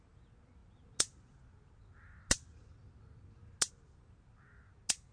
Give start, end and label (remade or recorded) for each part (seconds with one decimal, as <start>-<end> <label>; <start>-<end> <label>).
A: 0.0-5.1 recorded